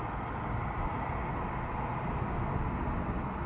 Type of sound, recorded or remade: recorded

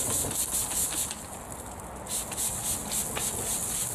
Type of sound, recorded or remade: recorded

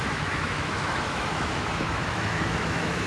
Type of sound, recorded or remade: remade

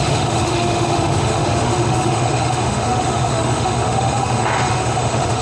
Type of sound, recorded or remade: remade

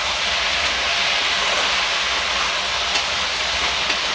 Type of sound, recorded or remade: recorded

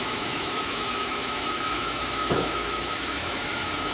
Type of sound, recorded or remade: remade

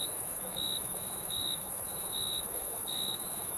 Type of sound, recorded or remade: remade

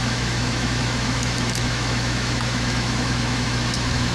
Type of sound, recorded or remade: remade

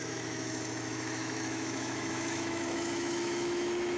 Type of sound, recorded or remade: remade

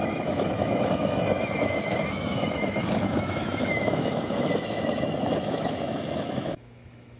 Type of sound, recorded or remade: remade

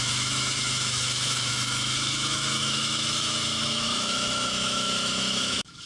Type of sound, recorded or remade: remade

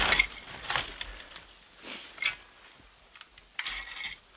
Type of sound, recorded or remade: recorded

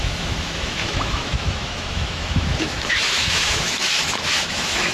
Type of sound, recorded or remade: remade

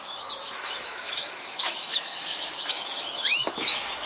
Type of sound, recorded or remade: remade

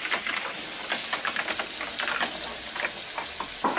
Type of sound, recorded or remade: recorded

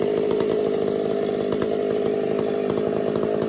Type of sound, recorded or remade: recorded